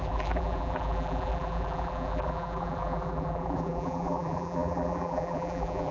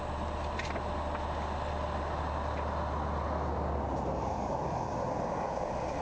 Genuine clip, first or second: second